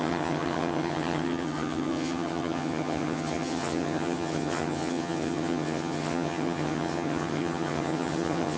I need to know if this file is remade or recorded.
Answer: remade